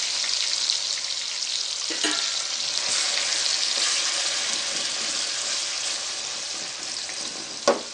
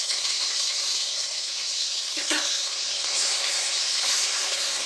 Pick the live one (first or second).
first